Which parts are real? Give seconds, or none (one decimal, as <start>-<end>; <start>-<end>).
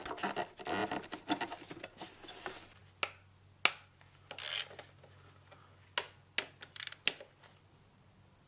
0.0-8.5